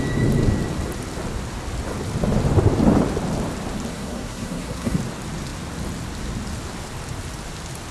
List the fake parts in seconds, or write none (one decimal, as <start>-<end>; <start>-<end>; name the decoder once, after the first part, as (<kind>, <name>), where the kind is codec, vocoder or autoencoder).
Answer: 3.9-5.0 (codec, SNAC)